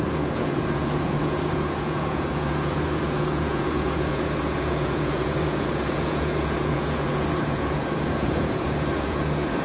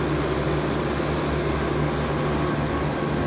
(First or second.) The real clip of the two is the second